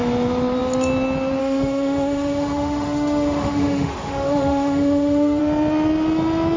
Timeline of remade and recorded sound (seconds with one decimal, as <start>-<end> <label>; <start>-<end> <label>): 0.0-1.4 recorded; 1.4-5.4 remade; 5.4-6.6 recorded